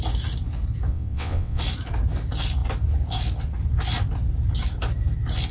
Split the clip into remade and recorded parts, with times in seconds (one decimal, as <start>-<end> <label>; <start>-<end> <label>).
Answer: 0.0-0.9 recorded; 0.9-1.6 remade; 1.6-5.5 recorded